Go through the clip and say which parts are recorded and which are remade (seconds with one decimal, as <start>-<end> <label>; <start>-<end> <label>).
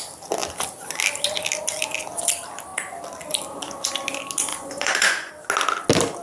0.0-4.5 recorded; 4.5-5.3 remade; 5.3-6.2 recorded